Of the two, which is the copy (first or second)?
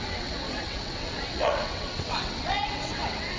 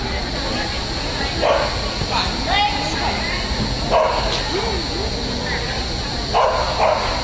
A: first